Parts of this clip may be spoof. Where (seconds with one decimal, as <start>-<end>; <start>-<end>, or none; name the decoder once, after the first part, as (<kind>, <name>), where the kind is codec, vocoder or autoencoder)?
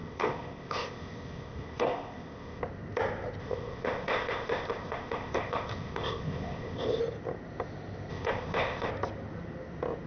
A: 0.0-2.6 (codec, ZipCodec); 3.4-7.0; 8.1-8.9